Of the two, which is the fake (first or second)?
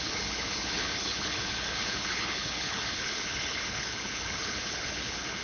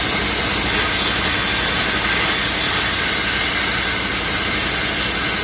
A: first